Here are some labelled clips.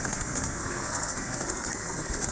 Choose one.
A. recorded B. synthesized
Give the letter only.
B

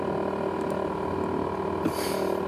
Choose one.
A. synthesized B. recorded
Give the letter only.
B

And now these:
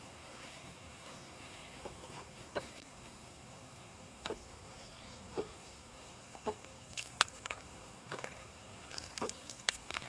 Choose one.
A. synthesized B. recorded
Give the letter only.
A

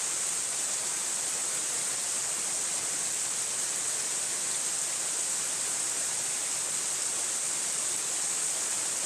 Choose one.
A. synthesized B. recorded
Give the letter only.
B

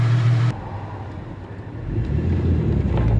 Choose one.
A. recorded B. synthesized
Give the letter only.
A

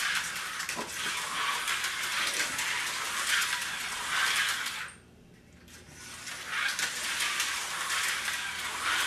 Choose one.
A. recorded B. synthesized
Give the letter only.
A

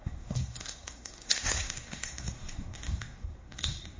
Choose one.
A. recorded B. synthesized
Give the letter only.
B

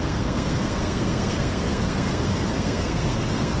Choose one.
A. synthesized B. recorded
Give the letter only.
A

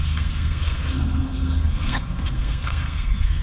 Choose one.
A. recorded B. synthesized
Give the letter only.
B